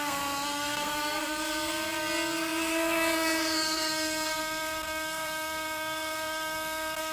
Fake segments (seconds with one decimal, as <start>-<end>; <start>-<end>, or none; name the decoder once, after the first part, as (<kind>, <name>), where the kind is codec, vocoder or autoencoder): 0.0-7.1 (codec, SNAC)